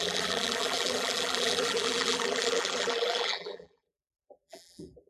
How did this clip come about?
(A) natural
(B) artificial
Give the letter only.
B